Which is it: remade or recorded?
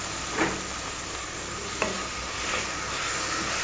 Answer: recorded